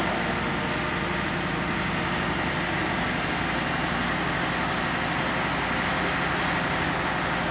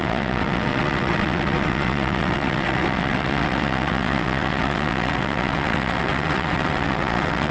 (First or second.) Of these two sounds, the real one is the first